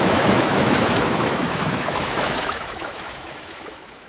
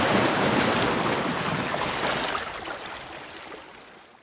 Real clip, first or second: second